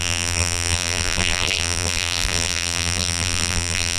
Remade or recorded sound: remade